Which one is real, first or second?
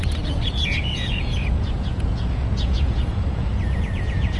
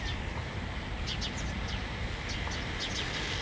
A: second